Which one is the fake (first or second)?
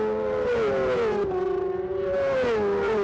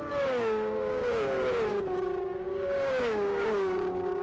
second